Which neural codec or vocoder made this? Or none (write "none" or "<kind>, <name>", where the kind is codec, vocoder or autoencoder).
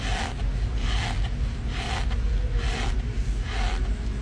none